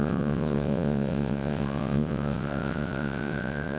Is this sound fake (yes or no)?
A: yes